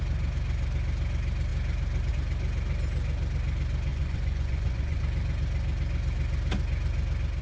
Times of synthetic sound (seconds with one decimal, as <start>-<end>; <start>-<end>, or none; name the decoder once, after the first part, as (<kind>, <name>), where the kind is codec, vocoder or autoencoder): 3.9-5.0 (vocoder, Vocos)